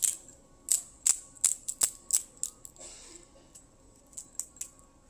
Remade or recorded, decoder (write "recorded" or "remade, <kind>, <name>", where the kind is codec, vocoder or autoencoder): recorded